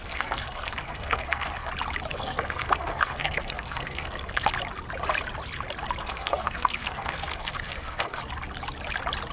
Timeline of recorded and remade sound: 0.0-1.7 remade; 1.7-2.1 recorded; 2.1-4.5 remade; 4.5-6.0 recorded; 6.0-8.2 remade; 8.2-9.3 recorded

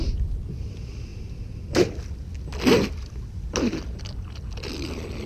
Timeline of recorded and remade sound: 0.0-5.3 recorded

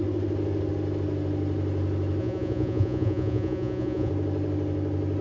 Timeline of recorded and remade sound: 0.0-2.2 recorded; 2.2-4.1 remade; 4.1-5.2 recorded